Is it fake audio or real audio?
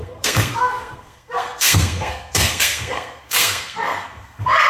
fake